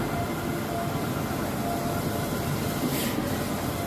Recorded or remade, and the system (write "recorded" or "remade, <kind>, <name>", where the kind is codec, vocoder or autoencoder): recorded